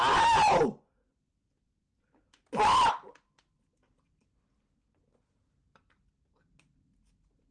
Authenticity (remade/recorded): recorded